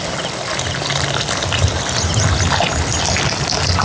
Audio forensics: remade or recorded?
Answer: recorded